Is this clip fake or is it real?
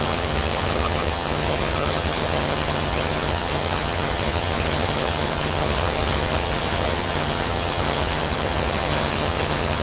fake